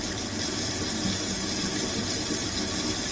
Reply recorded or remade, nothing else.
recorded